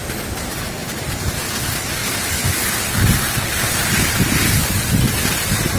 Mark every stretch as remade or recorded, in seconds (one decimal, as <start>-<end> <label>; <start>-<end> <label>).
0.0-5.8 recorded